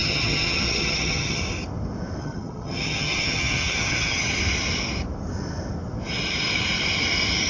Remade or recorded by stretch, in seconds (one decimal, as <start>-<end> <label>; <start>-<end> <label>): 0.0-1.4 remade; 1.4-2.2 recorded; 2.2-4.2 remade; 4.2-7.5 recorded